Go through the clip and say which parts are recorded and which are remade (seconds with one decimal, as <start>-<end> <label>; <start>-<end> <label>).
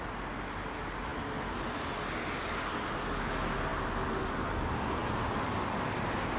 0.0-6.4 recorded